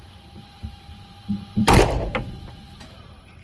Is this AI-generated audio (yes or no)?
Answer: yes